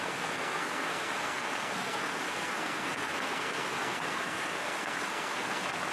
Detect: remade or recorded remade